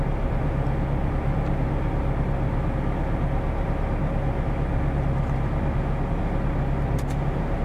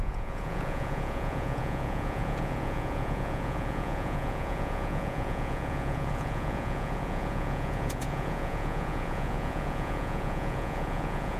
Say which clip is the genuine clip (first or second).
first